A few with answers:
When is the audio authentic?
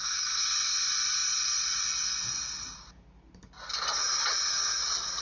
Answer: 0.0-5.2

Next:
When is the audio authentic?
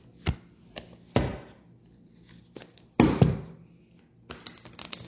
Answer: 0.0-5.1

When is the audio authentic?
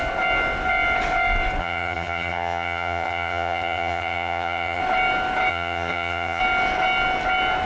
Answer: 0.0-1.6; 4.8-5.5; 6.4-7.7